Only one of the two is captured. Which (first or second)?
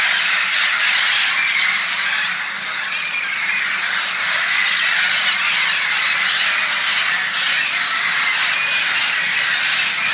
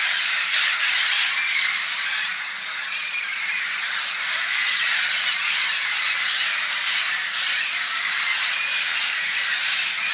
first